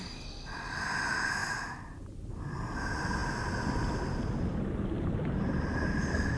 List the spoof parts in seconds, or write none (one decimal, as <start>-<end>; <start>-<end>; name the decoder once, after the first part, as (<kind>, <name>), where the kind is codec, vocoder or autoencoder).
none